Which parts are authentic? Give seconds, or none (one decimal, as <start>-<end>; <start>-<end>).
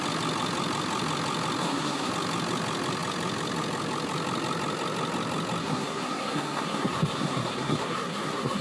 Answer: 0.0-1.6; 2.1-5.6